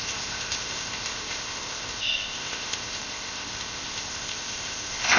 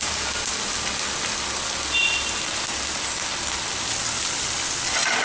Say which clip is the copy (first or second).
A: first